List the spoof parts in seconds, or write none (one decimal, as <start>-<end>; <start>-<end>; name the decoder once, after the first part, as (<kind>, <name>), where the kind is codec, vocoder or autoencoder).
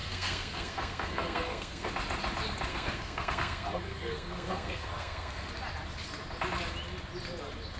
0.0-1.9 (codec, SNAC); 2.7-5.5